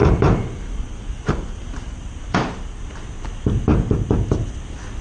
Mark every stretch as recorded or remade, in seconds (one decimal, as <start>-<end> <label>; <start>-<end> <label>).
0.0-3.0 remade; 3.0-5.0 recorded